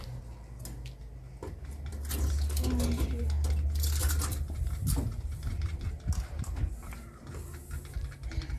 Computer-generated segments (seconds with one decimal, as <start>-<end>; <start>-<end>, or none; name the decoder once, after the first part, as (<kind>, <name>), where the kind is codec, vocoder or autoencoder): 4.0-5.9 (vocoder, BigVGAN v2)

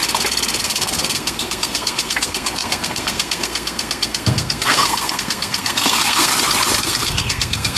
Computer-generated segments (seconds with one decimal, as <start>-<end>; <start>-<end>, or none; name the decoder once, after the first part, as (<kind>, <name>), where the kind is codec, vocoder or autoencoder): 0.6-6.3 (codec, SNAC); 6.8-7.8

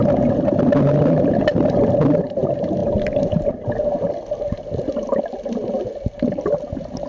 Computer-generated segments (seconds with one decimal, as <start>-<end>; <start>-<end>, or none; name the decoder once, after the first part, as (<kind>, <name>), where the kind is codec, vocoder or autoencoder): none

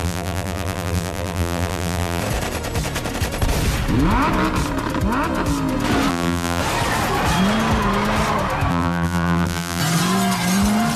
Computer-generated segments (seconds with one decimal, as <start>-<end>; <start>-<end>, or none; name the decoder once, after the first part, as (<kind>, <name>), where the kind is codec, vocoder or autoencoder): 0.0-2.2 (vocoder, BigVGAN v2); 6.1-6.6; 8.7-9.8

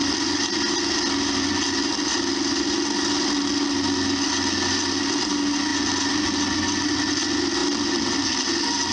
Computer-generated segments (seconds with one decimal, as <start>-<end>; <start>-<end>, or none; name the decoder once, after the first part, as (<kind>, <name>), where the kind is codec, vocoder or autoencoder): none